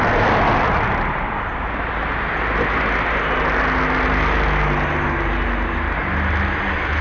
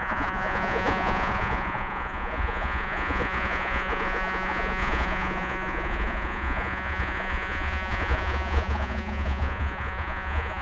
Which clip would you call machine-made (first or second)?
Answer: second